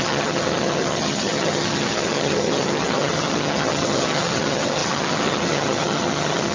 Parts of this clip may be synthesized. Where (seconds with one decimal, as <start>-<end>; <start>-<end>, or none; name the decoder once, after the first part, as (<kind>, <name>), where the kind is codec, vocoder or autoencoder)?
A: 0.0-6.5 (vocoder, HiFi-GAN)